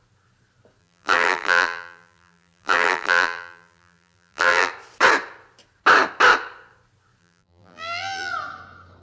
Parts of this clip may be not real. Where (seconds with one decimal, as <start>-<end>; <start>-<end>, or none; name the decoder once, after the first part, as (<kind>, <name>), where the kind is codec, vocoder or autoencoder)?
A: 0.8-4.7 (vocoder, BigVGAN v2); 7.2-8.3